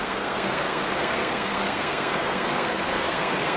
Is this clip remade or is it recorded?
remade